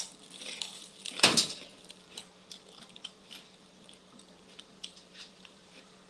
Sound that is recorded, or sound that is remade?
remade